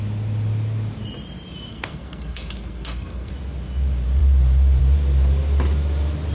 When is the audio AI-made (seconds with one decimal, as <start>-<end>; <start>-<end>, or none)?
1.7-3.3